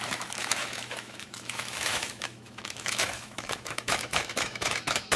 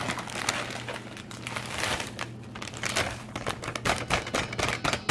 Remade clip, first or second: first